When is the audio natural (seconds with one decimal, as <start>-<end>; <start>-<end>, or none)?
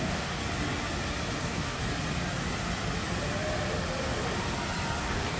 0.4-1.4; 1.8-5.0